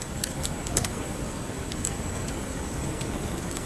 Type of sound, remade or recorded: remade